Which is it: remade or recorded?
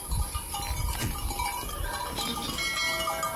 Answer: recorded